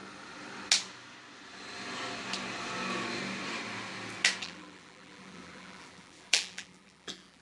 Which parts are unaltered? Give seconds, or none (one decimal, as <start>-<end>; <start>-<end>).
0.0-4.4